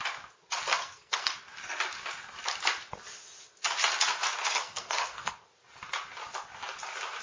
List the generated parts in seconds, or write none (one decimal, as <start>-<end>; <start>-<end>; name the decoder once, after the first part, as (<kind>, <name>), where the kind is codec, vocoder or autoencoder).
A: 0.7-1.3 (codec, SNAC); 4.4-5.3